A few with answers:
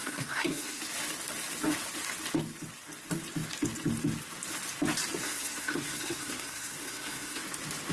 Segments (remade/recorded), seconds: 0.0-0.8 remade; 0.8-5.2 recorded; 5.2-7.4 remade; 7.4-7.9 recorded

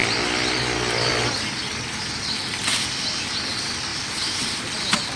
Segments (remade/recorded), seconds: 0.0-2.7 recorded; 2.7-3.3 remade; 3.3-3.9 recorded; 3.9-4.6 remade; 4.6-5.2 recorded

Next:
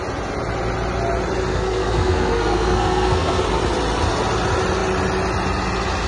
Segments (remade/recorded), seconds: 0.0-1.5 recorded; 1.5-3.4 remade; 3.4-6.1 recorded

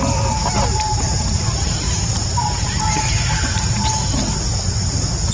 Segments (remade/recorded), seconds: 0.0-0.9 recorded; 0.9-3.6 remade; 3.6-5.3 recorded